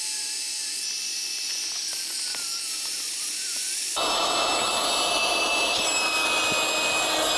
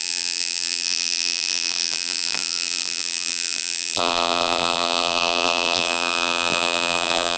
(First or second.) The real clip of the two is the first